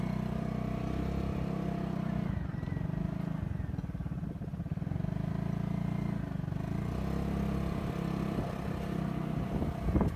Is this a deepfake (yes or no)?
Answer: no